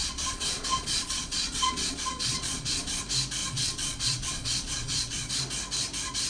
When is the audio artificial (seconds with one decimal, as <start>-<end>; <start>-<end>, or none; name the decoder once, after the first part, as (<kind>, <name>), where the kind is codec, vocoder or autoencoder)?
0.0-3.0 (vocoder, Vocos); 3.4-5.3